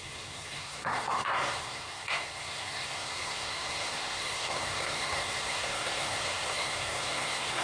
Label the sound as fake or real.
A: fake